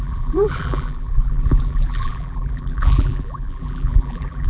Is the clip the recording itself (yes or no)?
no